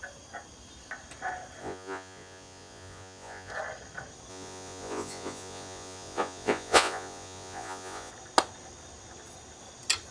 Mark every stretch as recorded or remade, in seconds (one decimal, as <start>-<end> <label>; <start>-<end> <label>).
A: 0.0-1.6 recorded; 1.6-3.5 remade; 3.5-4.3 recorded; 4.3-8.1 remade; 8.1-10.1 recorded